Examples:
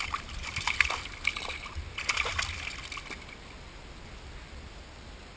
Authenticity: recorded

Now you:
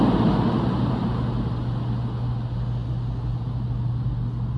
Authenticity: recorded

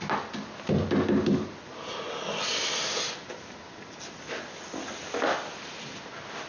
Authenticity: recorded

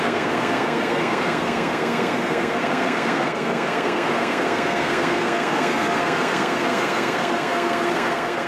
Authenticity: remade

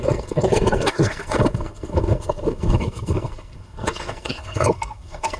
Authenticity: remade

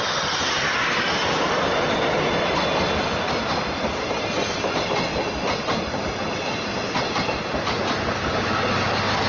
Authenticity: recorded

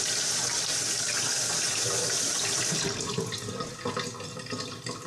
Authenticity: recorded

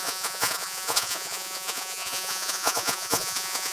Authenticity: remade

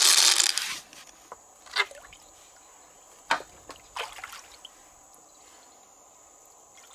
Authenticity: recorded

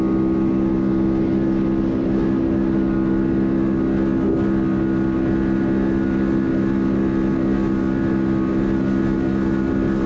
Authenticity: recorded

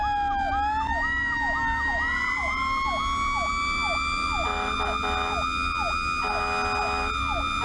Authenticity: recorded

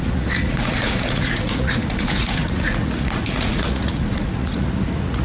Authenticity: remade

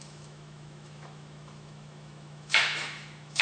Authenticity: remade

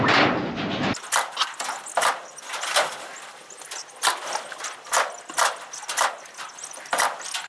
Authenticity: recorded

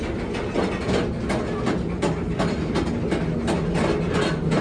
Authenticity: recorded